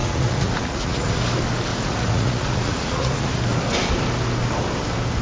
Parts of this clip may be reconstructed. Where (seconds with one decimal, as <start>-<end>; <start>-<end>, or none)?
0.0-1.2; 1.7-3.3

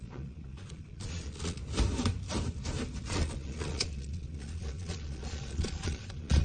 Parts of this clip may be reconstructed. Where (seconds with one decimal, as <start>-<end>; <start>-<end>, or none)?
0.0-1.6; 3.1-6.4

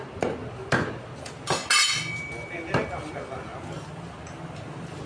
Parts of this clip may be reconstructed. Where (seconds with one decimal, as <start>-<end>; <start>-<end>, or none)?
none

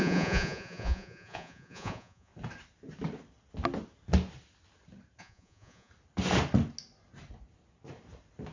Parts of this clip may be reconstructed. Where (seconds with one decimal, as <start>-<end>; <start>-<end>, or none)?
0.0-2.3; 5.2-5.9

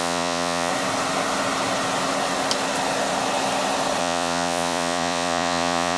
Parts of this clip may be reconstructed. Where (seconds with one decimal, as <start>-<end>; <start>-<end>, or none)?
0.0-0.7; 4.0-6.0